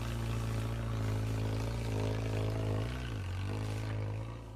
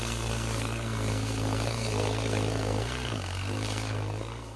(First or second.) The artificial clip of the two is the second